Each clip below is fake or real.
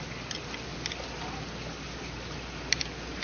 real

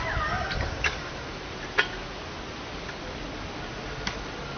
real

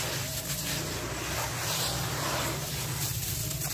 real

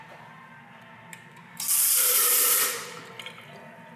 real